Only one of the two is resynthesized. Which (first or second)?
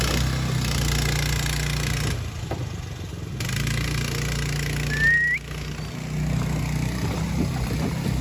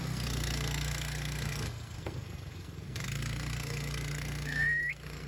second